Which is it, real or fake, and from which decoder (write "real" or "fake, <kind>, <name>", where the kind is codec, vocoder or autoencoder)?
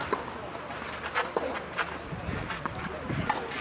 real